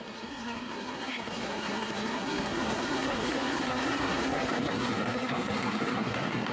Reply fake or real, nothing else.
fake